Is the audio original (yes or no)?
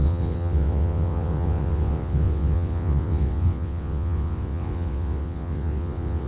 no